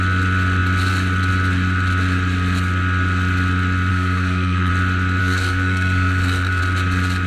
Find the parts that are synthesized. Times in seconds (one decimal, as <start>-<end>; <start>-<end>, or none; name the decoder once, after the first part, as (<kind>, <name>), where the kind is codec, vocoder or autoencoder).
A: 3.9-4.7 (codec, SNAC); 5.2-6.6